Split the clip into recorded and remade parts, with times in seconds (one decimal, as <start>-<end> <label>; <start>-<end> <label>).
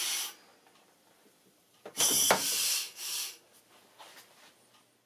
0.0-0.5 recorded; 0.5-3.6 remade; 3.6-5.1 recorded